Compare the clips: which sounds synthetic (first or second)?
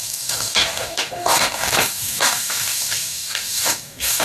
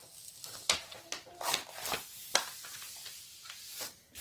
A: first